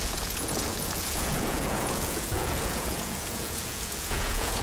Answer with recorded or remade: remade